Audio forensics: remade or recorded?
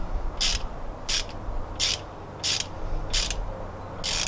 recorded